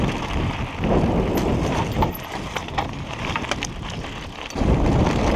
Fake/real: real